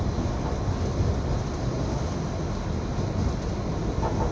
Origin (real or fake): real